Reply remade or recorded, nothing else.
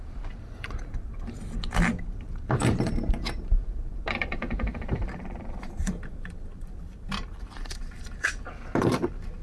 remade